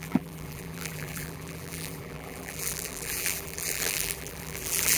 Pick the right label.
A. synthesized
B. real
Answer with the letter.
A